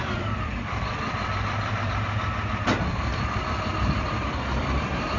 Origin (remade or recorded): remade